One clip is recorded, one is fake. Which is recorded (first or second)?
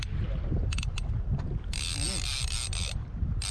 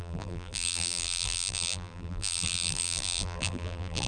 first